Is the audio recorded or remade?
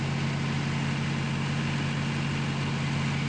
recorded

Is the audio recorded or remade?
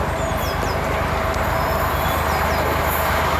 recorded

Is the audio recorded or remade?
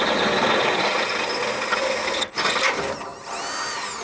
recorded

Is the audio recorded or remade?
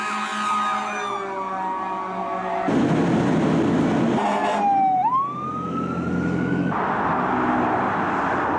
recorded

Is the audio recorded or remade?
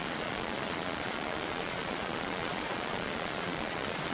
remade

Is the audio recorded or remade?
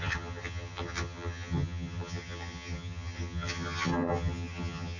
remade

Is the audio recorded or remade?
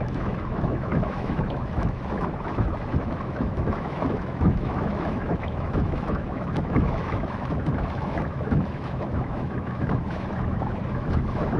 remade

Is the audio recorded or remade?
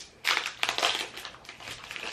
recorded